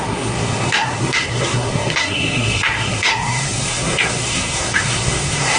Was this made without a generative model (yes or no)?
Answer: no